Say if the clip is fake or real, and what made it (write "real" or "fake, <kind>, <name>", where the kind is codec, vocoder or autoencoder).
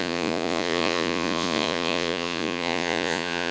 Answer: fake, vocoder, Vocos